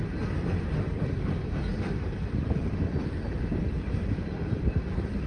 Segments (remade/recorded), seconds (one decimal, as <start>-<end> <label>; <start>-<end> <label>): 0.0-1.7 recorded; 1.7-5.3 remade